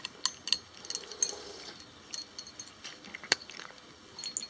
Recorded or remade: recorded